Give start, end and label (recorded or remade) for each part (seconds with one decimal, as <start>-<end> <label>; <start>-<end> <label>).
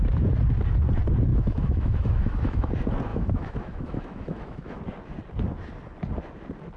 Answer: 0.0-1.3 recorded; 1.3-2.7 remade; 2.7-3.1 recorded; 3.1-4.8 remade; 4.8-6.8 recorded